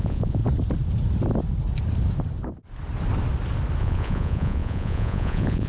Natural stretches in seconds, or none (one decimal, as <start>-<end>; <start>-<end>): 0.4-3.8

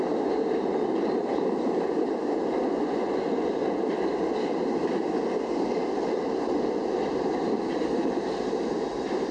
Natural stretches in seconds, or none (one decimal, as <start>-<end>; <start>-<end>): 0.0-2.8; 3.5-9.3

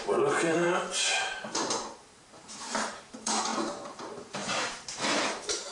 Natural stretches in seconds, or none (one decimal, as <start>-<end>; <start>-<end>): none

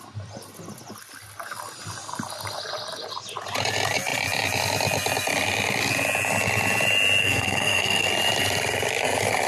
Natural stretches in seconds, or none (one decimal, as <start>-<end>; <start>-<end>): 0.0-7.2; 8.1-9.5

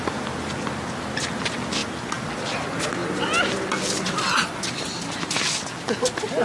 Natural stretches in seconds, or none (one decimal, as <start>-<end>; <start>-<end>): 0.0-6.4

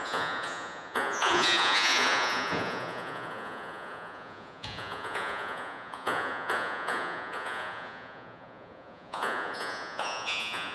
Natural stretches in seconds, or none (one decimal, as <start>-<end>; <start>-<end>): none

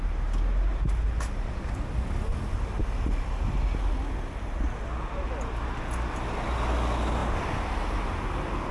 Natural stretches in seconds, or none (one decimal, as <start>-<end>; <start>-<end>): 0.0-8.7